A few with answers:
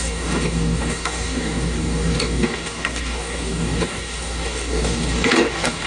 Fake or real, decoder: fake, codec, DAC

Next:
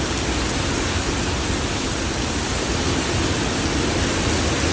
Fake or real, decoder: real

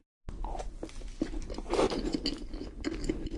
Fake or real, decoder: real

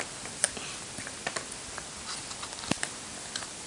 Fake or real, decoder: real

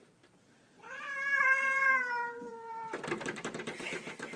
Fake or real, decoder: fake, vocoder, BigVGAN v2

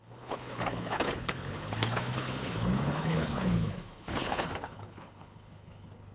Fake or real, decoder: fake, codec, HILCodec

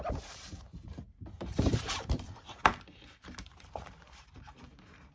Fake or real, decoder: fake, vocoder, BigVGAN v2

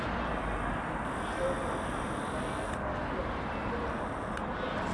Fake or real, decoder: real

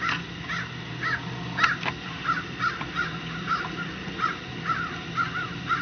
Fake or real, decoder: real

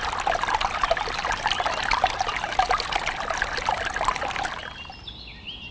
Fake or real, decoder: real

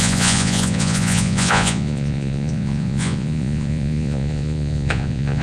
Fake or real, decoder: fake, vocoder, Vocos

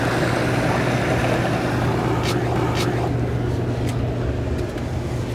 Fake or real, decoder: real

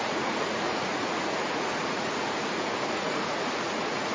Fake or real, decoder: fake, vocoder, Vocos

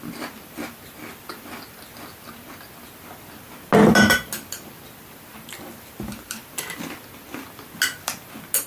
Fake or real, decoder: real